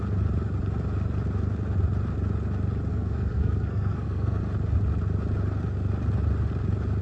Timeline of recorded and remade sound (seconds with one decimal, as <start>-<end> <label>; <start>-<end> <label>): 0.0-2.9 recorded; 2.9-4.4 remade; 4.4-7.0 recorded